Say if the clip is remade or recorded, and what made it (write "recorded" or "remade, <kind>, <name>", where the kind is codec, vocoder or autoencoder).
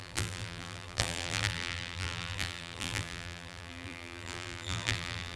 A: remade, vocoder, BigVGAN v2